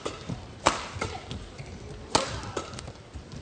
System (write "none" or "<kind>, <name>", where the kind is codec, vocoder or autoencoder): none